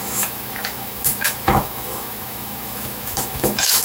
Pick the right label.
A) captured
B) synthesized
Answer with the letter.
B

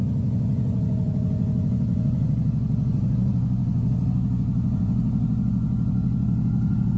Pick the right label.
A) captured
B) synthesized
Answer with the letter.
B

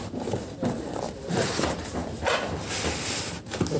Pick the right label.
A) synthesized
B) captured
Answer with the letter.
B